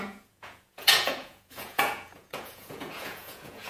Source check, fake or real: fake